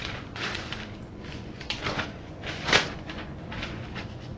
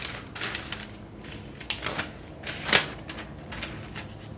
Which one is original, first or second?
second